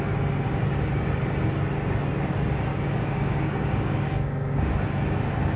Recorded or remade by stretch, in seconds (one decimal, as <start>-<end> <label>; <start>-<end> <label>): 0.0-2.7 recorded; 2.7-4.8 remade; 4.8-5.6 recorded